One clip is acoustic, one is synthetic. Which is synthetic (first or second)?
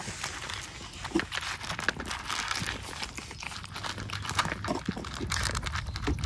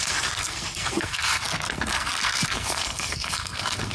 second